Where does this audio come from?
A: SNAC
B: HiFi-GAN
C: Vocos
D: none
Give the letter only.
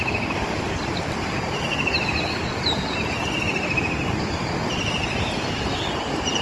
D